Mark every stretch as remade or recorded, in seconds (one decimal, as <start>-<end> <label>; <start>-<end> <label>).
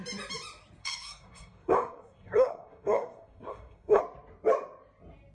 0.0-0.8 recorded; 0.8-4.0 remade; 4.0-5.3 recorded